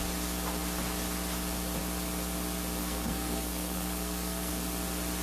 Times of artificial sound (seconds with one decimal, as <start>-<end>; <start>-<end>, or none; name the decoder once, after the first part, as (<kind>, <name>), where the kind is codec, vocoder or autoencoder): 2.8-4.5 (codec, SNAC)